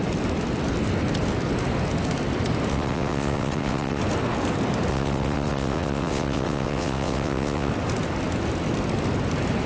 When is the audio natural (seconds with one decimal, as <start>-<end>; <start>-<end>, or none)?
0.0-2.7; 4.0-4.9; 7.7-9.7